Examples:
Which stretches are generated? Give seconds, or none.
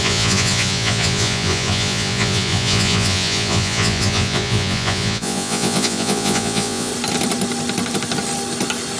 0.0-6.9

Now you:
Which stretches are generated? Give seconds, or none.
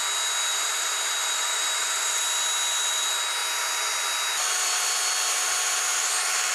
0.5-2.2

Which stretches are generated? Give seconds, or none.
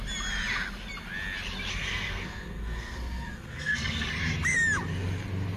1.7-4.1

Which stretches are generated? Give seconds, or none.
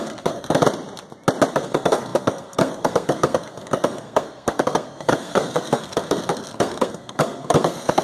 0.0-0.6; 1.5-8.0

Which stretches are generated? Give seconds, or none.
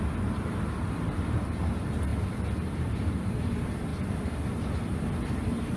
none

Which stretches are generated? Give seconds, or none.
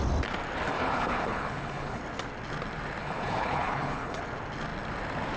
0.7-2.0; 3.0-4.2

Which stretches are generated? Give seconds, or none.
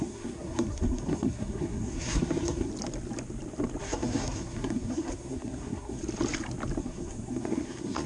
0.0-2.7; 3.8-6.0; 6.8-8.1